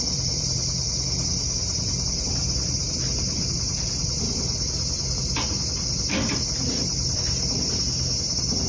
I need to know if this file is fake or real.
fake